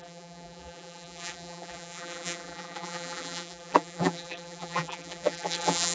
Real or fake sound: fake